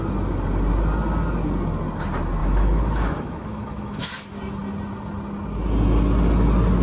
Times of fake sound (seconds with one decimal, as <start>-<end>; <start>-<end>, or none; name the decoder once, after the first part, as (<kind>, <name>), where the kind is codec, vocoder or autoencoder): 2.4-4.1 (autoencoder, DAC-VAE)